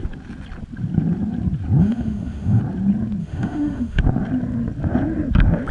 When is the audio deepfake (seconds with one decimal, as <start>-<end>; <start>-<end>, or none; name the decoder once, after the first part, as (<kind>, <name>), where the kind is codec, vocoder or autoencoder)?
1.8-2.6 (autoencoder, DAC-VAE); 3.2-4.0